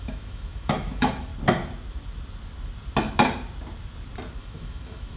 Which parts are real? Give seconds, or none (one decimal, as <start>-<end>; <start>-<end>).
1.3-4.4